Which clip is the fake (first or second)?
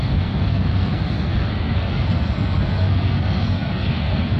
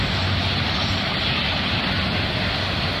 first